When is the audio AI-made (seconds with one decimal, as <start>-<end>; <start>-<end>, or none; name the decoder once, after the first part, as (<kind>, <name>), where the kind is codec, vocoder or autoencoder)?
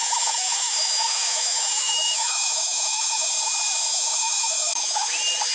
0.0-3.3 (autoencoder, DAC-VAE); 3.9-5.1